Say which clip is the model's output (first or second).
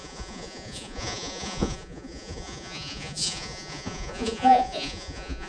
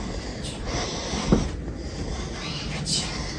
first